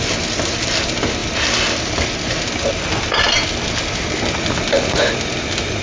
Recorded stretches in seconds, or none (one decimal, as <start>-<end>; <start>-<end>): 0.0-5.8